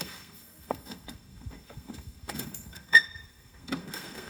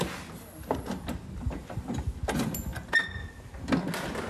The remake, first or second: first